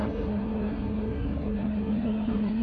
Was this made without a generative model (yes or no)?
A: no